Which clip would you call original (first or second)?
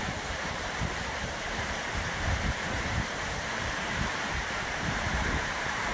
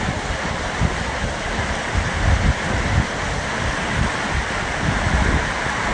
second